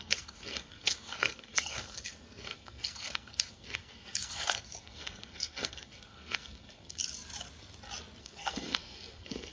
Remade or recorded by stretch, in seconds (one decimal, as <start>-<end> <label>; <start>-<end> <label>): 0.0-7.0 remade; 7.0-8.2 recorded; 8.2-9.5 remade